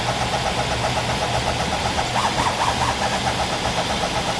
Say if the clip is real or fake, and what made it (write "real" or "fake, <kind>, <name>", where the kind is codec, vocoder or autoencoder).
real